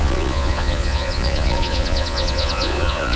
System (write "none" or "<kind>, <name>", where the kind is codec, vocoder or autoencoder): vocoder, Vocos